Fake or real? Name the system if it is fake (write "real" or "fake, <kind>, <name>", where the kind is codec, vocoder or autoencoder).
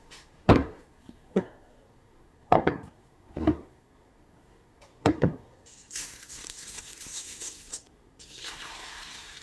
fake, codec, SNAC